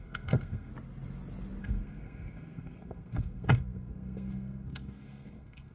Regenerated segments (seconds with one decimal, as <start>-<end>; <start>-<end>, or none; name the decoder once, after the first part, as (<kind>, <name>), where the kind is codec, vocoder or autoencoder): 0.0-0.7 (codec, SNAC); 1.6-5.7